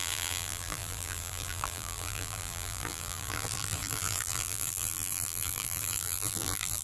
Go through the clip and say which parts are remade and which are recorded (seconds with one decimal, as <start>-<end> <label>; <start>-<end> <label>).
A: 0.0-6.8 remade